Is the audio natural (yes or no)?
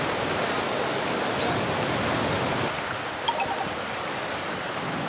yes